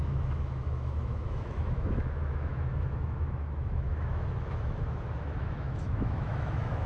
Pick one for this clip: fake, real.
fake